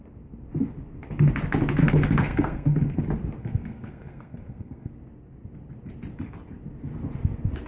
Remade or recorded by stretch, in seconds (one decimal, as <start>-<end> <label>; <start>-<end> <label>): 0.0-1.8 recorded; 1.8-3.0 remade; 3.0-3.4 recorded; 3.4-4.9 remade; 4.9-7.7 recorded